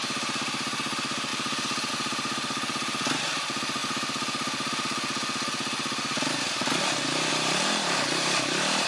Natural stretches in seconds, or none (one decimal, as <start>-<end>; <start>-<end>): 3.8-7.3